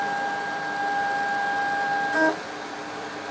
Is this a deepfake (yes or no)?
no